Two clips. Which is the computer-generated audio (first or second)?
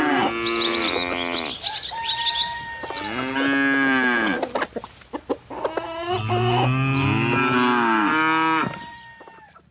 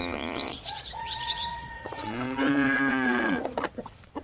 second